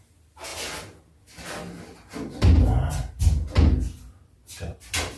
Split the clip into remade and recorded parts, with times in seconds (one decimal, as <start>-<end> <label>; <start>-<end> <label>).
0.0-5.2 recorded